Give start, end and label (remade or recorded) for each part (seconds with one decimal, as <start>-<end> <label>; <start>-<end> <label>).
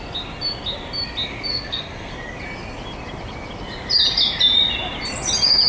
0.0-1.5 recorded; 1.5-2.1 remade; 2.1-5.7 recorded